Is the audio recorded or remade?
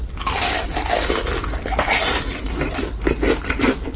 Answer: recorded